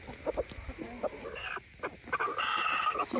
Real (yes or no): yes